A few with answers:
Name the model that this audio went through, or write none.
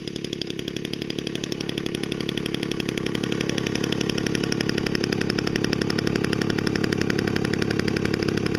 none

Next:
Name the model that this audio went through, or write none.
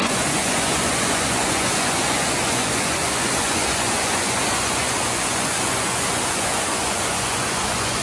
vocoder, Vocos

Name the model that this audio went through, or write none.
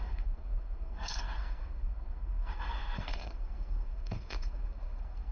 codec, SNAC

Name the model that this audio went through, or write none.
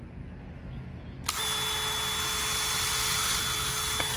none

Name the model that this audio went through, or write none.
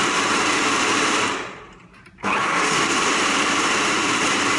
vocoder, BigVGAN v2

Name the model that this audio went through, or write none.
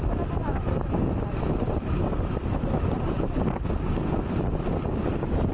none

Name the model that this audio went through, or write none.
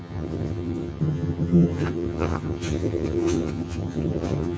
vocoder, HiFi-GAN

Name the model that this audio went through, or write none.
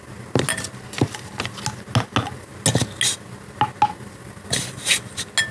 none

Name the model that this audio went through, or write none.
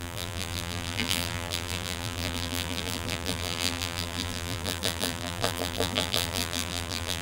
vocoder, BigVGAN v2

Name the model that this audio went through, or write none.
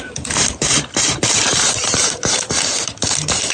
vocoder, BigVGAN v2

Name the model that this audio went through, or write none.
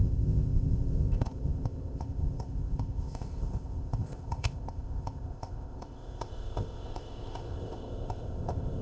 codec, ZipCodec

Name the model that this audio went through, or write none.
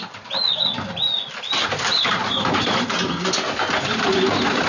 none